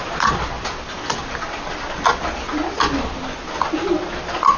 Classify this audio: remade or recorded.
recorded